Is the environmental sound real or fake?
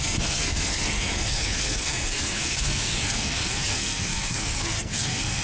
fake